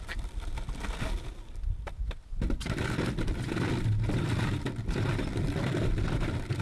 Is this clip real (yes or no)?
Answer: yes